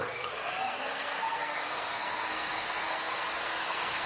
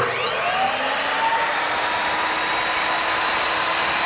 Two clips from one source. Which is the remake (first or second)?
first